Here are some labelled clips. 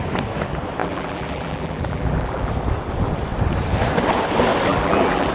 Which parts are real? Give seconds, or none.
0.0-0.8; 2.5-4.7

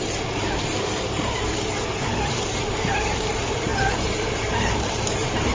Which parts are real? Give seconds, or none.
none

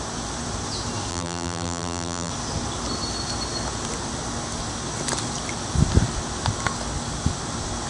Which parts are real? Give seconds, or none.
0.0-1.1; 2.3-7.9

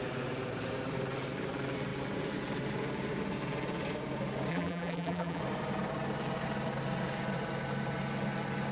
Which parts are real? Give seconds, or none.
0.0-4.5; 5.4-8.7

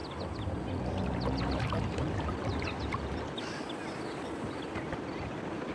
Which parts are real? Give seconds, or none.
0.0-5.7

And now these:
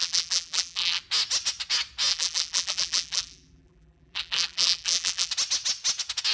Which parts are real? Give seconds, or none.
1.0-2.1; 5.3-6.3

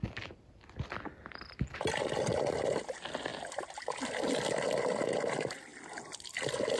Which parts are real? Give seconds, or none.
0.0-0.6; 5.7-6.2

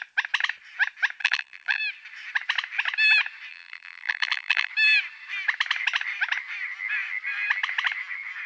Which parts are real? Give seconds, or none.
0.0-1.2; 1.8-3.5; 4.7-8.5